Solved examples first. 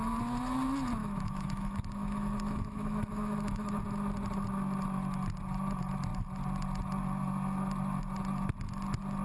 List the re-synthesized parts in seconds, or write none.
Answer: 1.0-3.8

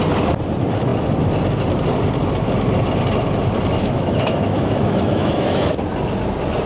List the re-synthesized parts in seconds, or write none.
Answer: 3.8-5.7

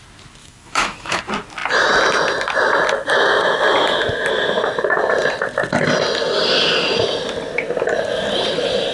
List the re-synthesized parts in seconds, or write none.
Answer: 0.4-1.2